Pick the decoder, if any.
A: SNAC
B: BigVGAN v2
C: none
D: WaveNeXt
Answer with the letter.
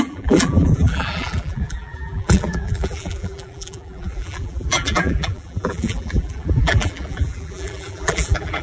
B